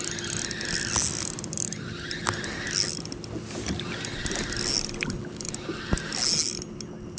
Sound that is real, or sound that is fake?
real